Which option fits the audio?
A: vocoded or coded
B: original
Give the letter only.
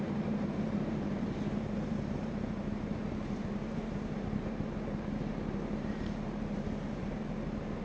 A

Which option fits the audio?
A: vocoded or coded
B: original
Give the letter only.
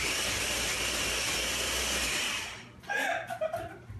B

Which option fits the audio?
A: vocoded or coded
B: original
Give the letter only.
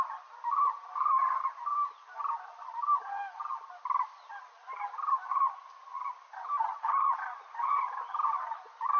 A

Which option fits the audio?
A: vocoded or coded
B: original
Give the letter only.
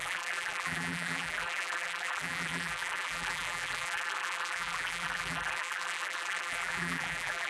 A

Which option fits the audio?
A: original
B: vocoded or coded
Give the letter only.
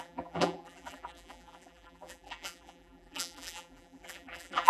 B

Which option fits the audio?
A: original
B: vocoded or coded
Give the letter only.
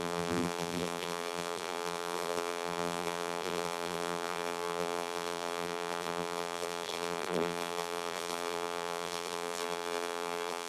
B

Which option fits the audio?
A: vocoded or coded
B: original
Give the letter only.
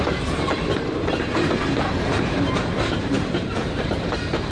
A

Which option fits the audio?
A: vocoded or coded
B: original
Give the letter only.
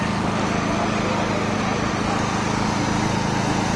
B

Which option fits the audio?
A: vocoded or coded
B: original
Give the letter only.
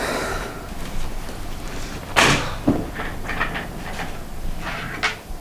B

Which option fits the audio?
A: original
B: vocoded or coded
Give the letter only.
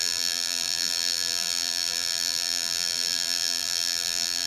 B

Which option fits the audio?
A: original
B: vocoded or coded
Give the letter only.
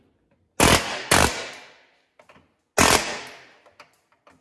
A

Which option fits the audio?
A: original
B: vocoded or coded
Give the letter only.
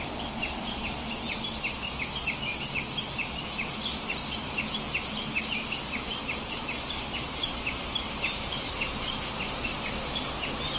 A